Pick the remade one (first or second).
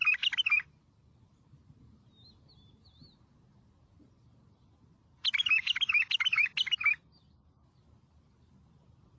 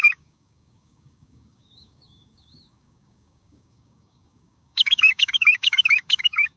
second